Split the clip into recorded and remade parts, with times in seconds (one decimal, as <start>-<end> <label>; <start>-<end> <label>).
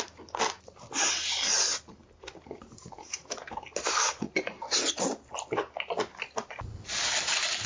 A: 0.0-2.0 recorded; 2.0-5.3 remade; 5.3-7.7 recorded